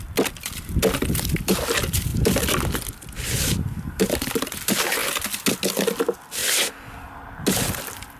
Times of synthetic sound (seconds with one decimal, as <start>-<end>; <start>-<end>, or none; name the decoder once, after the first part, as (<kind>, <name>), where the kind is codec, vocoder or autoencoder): 0.7-5.0 (vocoder, BigVGAN v2); 6.0-6.4; 7.7-8.2